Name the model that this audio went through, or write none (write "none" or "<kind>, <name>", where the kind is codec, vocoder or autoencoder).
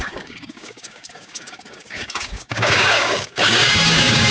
codec, DAC